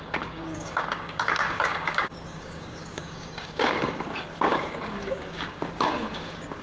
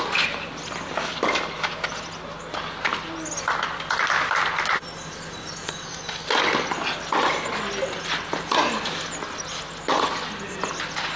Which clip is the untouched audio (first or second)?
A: second